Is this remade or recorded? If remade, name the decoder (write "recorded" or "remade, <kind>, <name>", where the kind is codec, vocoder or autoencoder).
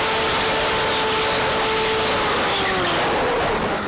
recorded